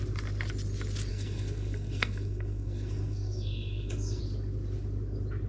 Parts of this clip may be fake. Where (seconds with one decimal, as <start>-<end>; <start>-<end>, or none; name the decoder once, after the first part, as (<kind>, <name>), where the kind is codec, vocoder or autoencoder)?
1.1-4.2 (codec, SNAC)